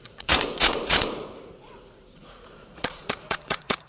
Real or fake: fake